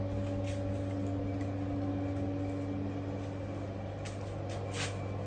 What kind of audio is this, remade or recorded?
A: recorded